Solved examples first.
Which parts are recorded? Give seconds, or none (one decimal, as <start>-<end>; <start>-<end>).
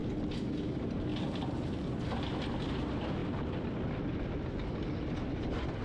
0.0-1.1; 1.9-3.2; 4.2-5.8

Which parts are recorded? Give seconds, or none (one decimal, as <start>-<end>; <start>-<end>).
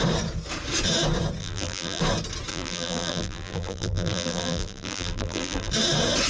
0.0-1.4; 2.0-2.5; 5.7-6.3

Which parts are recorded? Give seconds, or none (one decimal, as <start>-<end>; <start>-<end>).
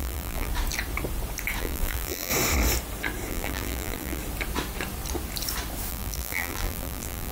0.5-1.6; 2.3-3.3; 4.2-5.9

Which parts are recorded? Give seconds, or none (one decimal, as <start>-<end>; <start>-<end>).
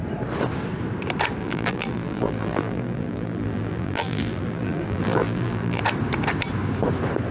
0.0-1.4; 5.8-7.3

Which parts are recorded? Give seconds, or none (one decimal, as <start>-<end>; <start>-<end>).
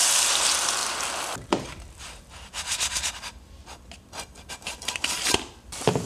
0.8-4.5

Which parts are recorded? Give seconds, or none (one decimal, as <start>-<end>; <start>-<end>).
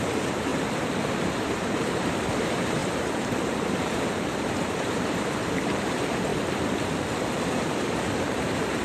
0.5-1.2; 6.3-7.0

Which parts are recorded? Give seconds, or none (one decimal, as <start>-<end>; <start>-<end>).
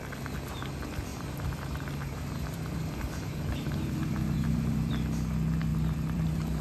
0.0-1.1; 4.9-5.7